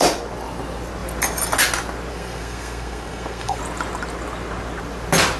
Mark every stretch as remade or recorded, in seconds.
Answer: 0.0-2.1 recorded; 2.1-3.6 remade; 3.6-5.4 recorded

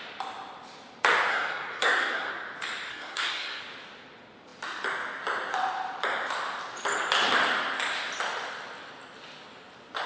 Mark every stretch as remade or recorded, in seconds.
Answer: 0.0-1.3 recorded; 1.3-2.3 remade; 2.3-2.9 recorded; 2.9-3.6 remade; 3.6-10.1 recorded

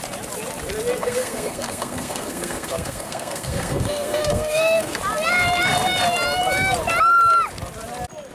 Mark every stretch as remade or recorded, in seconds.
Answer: 0.0-1.0 recorded; 1.0-5.0 remade; 5.0-8.3 recorded

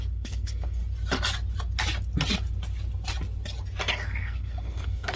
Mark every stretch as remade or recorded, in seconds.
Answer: 0.0-0.8 remade; 0.8-3.9 recorded; 3.9-5.2 remade

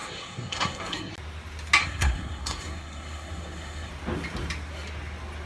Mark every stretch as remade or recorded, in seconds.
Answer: 0.0-1.1 remade; 1.1-1.8 recorded; 1.8-3.9 remade; 3.9-5.5 recorded